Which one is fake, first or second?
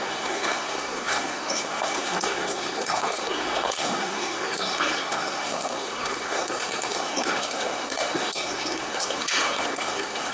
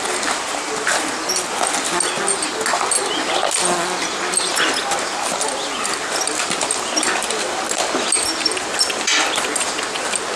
first